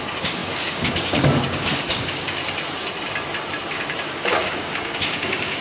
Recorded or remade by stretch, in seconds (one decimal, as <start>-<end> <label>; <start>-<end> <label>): 0.0-2.4 remade; 2.4-3.7 recorded; 3.7-5.6 remade